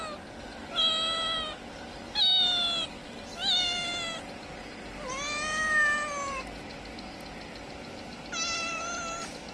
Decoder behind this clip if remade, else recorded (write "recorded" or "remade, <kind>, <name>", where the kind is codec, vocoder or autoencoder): recorded